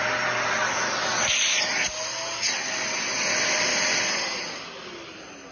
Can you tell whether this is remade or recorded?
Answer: recorded